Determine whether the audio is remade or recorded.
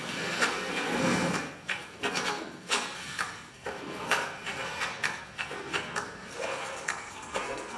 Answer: remade